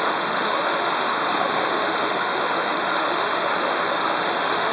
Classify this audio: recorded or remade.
remade